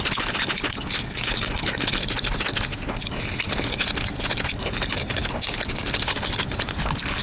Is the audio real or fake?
real